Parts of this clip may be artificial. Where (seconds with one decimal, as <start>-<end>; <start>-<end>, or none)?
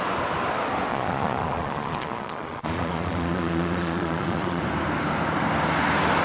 0.9-4.6